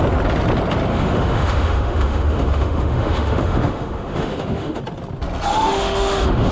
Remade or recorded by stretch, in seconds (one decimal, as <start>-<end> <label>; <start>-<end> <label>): 0.0-0.9 recorded; 0.9-4.8 remade; 4.8-5.5 recorded; 5.5-6.5 remade